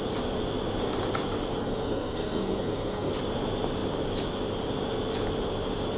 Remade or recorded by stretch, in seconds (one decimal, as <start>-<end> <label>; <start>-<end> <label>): 0.0-1.6 recorded; 1.6-3.1 remade; 3.1-6.0 recorded